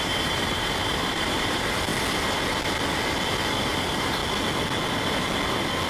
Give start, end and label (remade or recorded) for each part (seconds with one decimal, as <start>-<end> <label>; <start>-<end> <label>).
0.0-1.9 remade; 1.9-3.6 recorded; 3.6-4.2 remade; 4.2-5.9 recorded